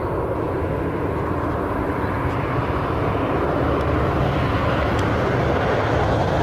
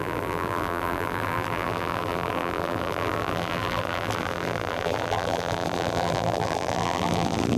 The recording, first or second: first